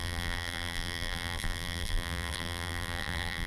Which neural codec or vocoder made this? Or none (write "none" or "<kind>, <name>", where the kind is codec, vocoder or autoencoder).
vocoder, BigVGAN v2